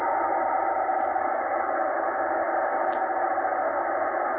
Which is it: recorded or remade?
recorded